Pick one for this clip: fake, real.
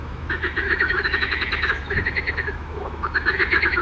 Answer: fake